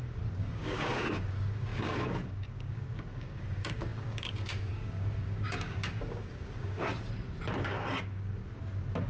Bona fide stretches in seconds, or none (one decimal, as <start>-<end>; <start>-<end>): 6.9-7.6; 8.4-9.1